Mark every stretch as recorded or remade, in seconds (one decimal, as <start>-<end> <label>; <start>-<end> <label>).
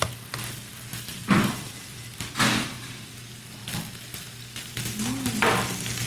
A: 0.0-0.9 recorded; 0.9-2.9 remade; 2.9-6.1 recorded